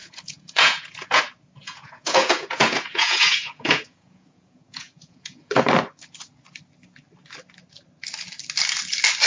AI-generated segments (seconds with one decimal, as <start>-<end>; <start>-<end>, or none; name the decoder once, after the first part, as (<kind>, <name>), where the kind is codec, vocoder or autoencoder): 0.0-1.2 (vocoder, Vocos); 1.6-5.6